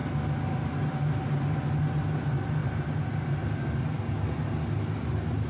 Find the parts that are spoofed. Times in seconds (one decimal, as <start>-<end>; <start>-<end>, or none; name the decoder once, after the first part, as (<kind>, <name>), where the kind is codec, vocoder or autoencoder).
2.6-3.3 (vocoder, BigVGAN v2)